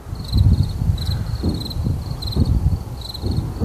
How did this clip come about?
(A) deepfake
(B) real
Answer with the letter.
B